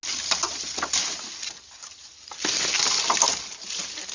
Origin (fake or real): real